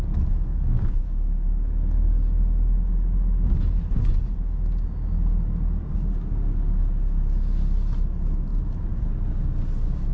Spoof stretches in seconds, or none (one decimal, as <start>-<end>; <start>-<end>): 0.5-1.7